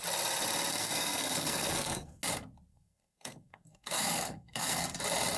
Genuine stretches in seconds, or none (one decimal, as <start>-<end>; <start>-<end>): 0.0-0.7; 2.2-2.7; 5.0-5.4